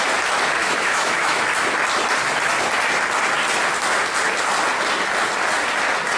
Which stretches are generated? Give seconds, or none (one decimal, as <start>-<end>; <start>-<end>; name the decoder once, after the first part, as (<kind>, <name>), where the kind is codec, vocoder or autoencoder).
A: 0.6-1.4 (autoencoder, DAC-VAE)